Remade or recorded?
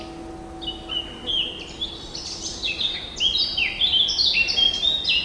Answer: recorded